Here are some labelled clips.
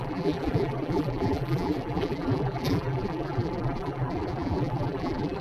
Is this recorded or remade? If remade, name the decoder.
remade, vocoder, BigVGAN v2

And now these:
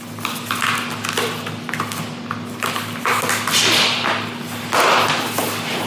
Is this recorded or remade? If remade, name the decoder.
recorded